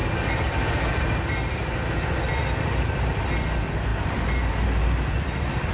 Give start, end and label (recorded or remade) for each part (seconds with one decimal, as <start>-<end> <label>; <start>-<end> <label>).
0.0-5.7 recorded